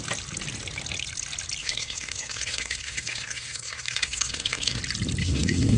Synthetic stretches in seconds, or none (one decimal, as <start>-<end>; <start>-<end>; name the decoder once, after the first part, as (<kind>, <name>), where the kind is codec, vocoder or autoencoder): 1.6-4.8 (codec, SNAC); 5.2-5.8